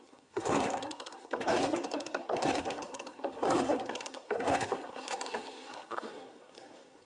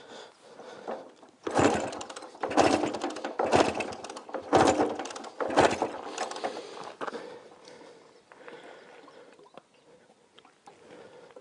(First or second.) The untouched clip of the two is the second